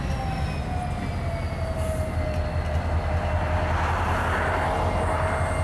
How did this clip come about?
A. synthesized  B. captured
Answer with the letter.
B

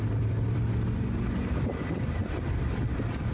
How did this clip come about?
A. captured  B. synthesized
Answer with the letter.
B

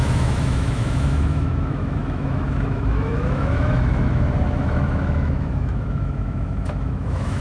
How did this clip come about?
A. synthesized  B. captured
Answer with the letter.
A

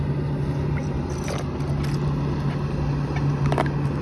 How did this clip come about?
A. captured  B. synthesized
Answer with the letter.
A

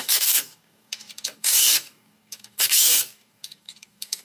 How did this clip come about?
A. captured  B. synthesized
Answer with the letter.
B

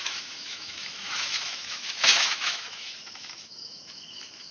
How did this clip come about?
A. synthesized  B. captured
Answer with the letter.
A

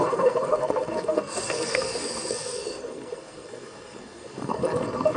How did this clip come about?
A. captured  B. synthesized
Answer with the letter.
B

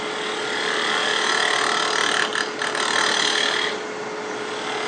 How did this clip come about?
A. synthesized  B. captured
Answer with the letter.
B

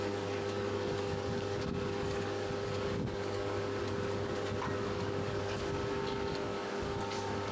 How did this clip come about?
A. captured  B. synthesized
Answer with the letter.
B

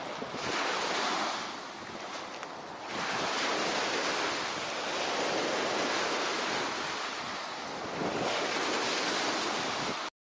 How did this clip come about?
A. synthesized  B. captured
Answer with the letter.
B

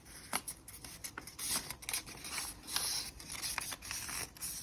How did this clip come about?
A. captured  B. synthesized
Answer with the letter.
A